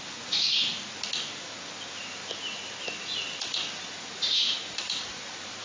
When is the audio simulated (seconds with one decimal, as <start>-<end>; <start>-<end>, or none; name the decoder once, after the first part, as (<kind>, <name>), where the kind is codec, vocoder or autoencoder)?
0.0-0.7 (vocoder, BigVGAN v2); 4.1-5.6